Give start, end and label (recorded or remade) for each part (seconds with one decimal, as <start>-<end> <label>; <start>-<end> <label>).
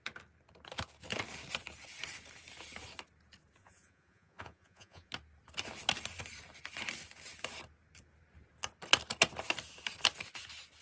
0.0-3.6 recorded; 3.6-5.1 remade; 5.1-10.8 recorded